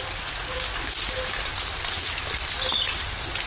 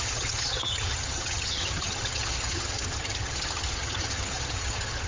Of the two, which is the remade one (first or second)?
second